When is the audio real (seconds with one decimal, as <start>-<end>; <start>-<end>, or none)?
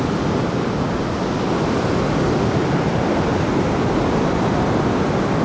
0.0-5.4